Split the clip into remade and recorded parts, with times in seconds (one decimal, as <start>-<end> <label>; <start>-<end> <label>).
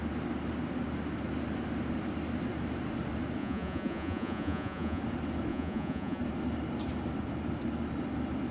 0.0-3.4 recorded; 3.4-5.0 remade; 5.0-5.5 recorded; 5.5-6.2 remade; 6.2-8.5 recorded